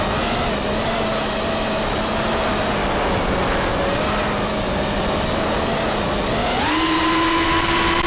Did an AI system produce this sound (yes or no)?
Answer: no